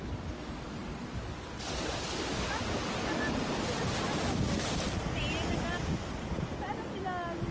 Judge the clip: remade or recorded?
recorded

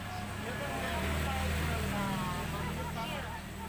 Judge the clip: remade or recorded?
recorded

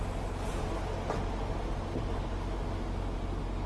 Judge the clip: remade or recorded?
recorded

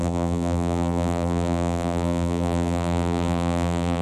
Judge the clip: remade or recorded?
remade